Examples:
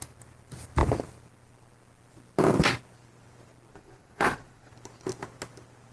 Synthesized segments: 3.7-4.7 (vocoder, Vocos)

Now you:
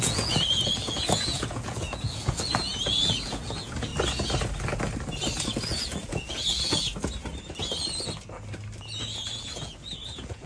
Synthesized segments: 0.0-3.9 (vocoder, Vocos); 5.4-6.9; 9.0-10.5

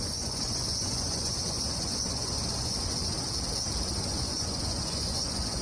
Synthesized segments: 0.0-3.0 (vocoder, Vocos); 3.9-5.6

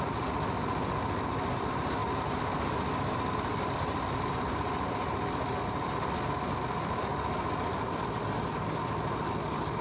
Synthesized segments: none

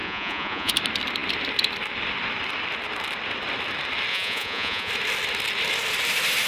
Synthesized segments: 0.0-0.7 (vocoder, Vocos); 4.1-4.9

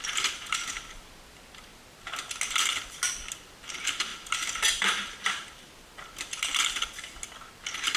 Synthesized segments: none

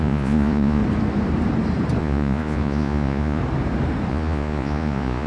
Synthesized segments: 0.0-0.8 (vocoder, Vocos); 2.0-3.4; 4.1-5.3